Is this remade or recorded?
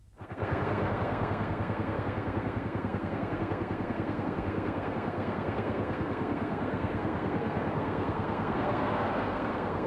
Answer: remade